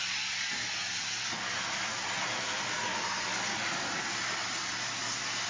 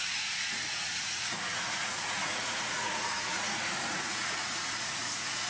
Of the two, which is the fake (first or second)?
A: second